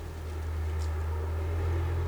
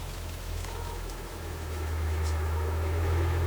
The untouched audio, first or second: first